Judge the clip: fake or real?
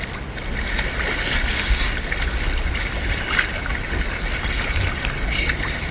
real